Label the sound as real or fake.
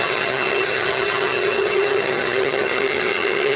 fake